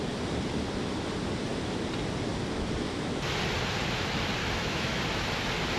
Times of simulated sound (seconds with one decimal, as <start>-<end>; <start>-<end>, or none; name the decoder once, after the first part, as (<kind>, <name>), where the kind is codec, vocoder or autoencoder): 4.4-5.0 (autoencoder, DAC-VAE)

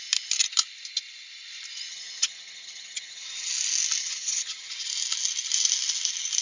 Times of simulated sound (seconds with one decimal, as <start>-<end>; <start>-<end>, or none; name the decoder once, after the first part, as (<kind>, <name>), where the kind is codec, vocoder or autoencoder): 1.9-3.5 (vocoder, HiFi-GAN); 4.0-4.7

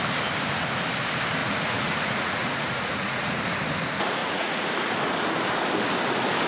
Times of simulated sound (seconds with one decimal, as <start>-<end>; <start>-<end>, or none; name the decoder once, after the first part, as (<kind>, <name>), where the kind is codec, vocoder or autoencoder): 1.4-3.4 (vocoder, Vocos); 4.2-4.7

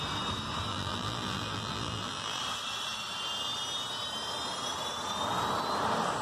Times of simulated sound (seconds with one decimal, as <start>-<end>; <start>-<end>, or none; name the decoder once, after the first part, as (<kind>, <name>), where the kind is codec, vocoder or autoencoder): 0.7-2.4 (vocoder, BigVGAN v2)

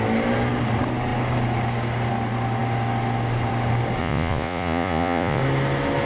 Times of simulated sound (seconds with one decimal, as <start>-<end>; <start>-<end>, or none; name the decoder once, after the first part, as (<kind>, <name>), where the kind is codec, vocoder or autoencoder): 4.0-5.4 (vocoder, Vocos)

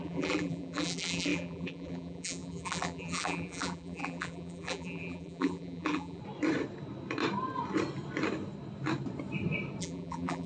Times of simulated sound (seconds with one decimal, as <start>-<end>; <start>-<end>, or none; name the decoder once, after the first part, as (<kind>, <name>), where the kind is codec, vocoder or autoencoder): 0.0-6.2 (vocoder, BigVGAN v2); 9.8-10.5

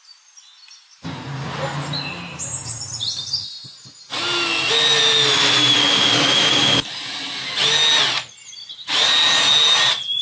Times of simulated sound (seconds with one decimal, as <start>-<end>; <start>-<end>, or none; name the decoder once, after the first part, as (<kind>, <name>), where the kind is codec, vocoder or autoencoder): none